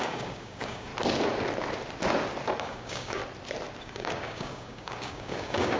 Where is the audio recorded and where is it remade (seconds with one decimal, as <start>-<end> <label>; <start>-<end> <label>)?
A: 0.0-0.9 remade; 0.9-2.6 recorded; 2.6-3.2 remade; 3.2-3.8 recorded; 3.8-5.8 remade